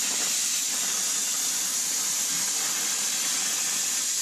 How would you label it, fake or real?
real